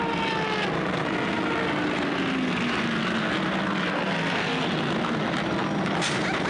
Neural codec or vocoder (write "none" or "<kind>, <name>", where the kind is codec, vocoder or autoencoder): none